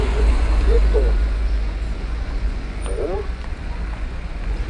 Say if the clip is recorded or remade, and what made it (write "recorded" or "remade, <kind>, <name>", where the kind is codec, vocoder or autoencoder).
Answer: remade, vocoder, Vocos